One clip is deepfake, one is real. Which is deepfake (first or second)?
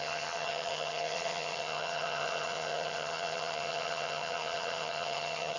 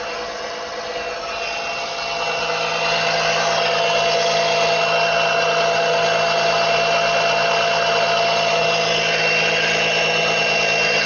first